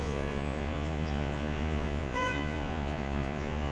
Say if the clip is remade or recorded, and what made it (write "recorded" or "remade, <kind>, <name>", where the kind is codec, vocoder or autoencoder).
remade, vocoder, Vocos